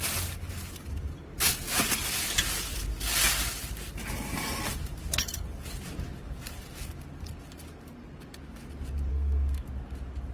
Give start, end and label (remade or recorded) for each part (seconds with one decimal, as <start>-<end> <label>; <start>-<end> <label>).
0.0-9.1 recorded; 9.1-9.7 remade; 9.7-10.3 recorded